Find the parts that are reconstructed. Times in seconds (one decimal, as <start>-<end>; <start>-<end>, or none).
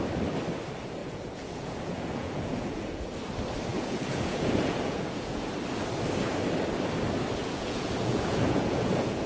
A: 1.0-3.0; 3.7-5.5; 7.4-9.3